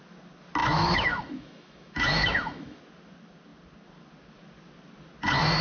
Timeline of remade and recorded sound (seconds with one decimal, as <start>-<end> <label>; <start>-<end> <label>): 0.0-0.6 recorded; 0.6-2.8 remade; 2.8-5.6 recorded